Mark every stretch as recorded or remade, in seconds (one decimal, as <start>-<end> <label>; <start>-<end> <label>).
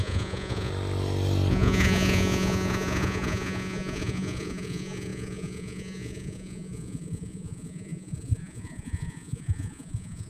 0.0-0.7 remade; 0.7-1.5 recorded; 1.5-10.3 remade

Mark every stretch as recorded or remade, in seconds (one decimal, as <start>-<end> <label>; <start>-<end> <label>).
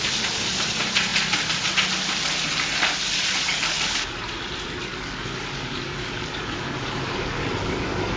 0.0-3.5 recorded; 3.5-4.2 remade; 4.2-4.9 recorded; 4.9-8.2 remade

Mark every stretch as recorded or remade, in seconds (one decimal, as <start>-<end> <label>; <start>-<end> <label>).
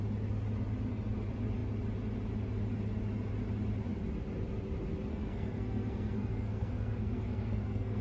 0.0-5.1 recorded; 5.1-8.0 remade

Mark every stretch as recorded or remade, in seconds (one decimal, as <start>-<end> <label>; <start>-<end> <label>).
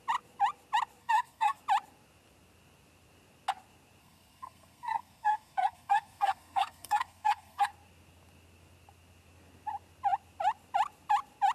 0.0-1.0 recorded; 1.0-1.6 remade; 1.6-4.0 recorded; 4.0-7.7 remade; 7.7-11.5 recorded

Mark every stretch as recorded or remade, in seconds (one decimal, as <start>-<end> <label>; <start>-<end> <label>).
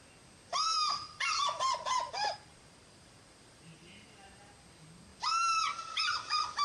0.0-0.5 recorded; 0.5-4.5 remade; 4.5-6.6 recorded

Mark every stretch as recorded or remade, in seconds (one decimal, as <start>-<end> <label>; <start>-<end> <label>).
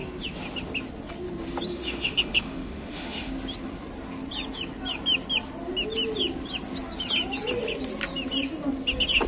0.0-1.7 recorded; 1.7-3.3 remade; 3.3-9.3 recorded